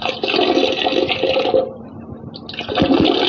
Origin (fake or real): real